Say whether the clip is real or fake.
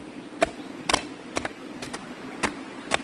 real